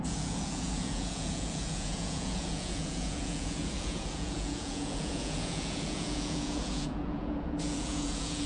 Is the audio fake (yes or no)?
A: yes